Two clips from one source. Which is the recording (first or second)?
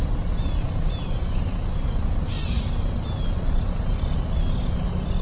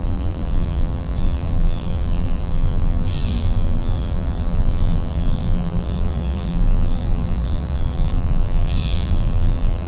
first